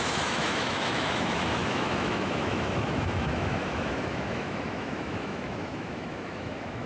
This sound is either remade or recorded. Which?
remade